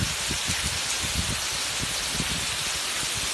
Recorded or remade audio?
recorded